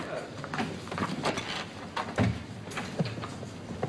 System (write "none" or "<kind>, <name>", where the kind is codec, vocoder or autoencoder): none